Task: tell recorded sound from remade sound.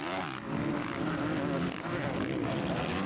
recorded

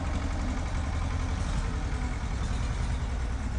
remade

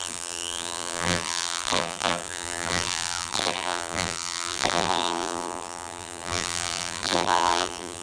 remade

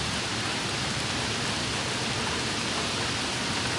recorded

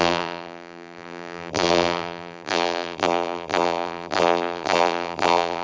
remade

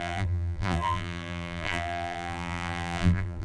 remade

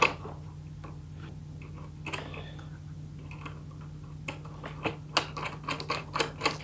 recorded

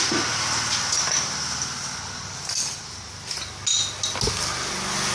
recorded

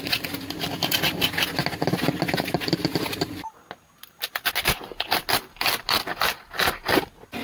recorded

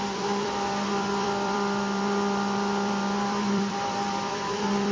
remade